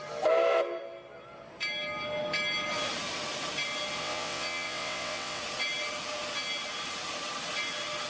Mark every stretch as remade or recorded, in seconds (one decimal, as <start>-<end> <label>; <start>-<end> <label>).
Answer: 0.0-4.0 recorded; 4.0-5.4 remade; 5.4-8.1 recorded